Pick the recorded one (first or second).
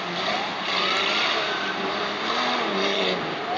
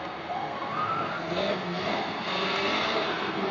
first